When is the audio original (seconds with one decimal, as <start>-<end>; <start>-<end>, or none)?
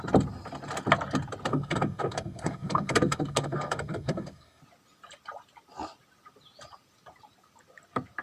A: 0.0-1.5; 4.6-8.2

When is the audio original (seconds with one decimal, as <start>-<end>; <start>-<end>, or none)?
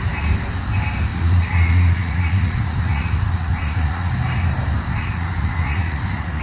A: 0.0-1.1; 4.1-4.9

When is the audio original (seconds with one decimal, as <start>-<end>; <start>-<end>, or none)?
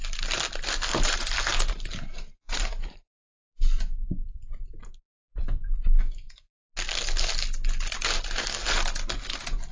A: 0.0-0.9; 6.0-9.7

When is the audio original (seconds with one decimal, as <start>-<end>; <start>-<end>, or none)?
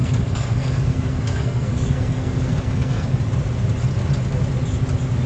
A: 3.2-5.3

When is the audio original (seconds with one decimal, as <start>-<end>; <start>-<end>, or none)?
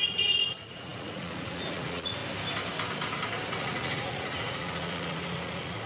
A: 2.2-3.6